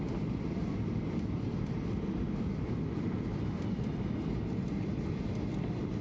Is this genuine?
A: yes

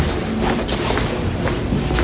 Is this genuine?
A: yes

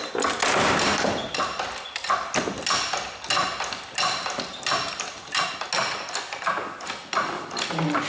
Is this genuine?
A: yes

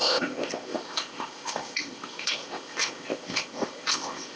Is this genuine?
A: no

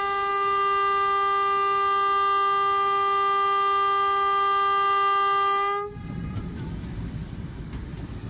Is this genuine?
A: yes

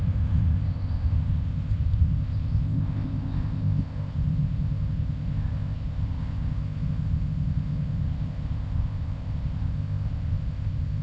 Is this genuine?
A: no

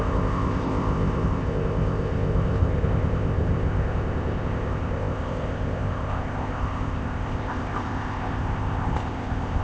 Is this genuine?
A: no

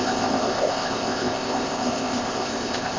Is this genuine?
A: no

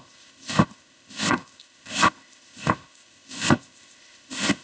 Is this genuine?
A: no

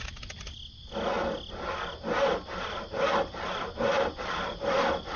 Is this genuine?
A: yes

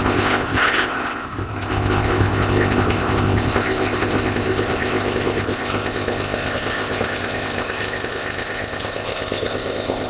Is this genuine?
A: no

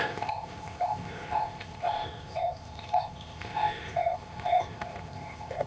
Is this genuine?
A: no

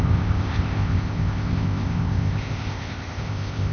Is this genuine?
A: no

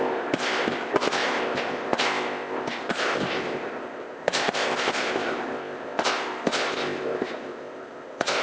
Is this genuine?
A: no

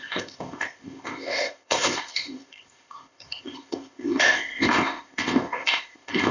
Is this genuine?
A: no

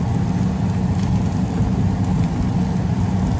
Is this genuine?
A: yes